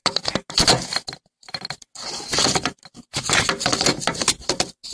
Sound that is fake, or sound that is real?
real